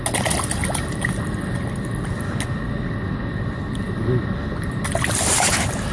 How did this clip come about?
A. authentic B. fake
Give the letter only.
A